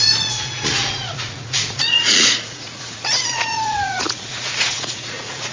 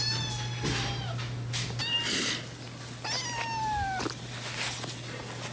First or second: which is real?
second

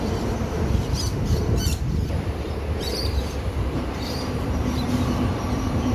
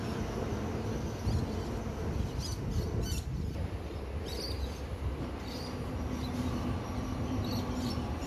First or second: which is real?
second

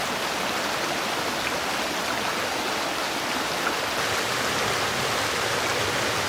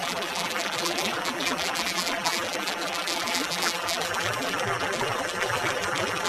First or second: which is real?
first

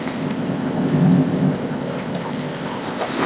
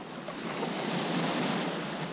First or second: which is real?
second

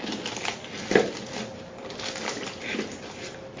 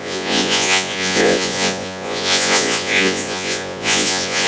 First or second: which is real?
first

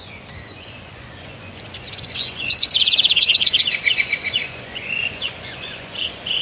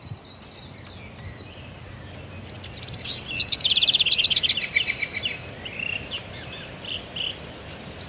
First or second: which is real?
second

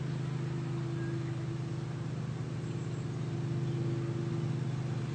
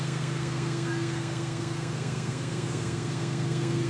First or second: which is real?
first